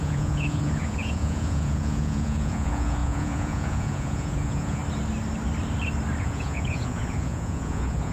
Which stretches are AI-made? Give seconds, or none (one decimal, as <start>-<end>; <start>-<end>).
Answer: 0.0-4.8; 6.2-8.1